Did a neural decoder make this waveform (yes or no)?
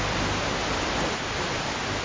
no